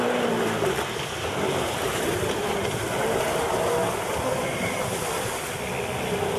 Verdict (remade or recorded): recorded